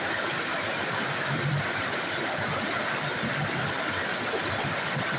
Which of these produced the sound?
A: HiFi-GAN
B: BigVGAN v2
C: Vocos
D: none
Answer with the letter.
D